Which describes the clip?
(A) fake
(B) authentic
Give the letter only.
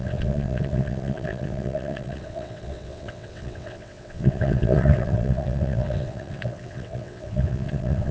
A